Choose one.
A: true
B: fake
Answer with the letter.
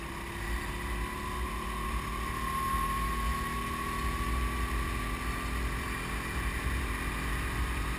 A